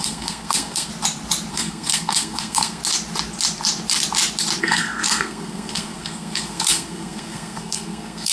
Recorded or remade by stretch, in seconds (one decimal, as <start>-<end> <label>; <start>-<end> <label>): 0.0-0.9 remade; 0.9-1.5 recorded; 1.5-2.8 remade; 2.8-4.6 recorded; 4.6-8.3 remade